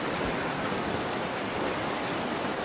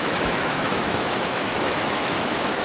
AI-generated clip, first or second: second